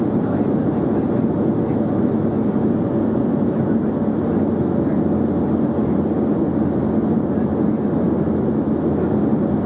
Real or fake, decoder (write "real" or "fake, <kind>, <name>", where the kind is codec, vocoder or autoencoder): real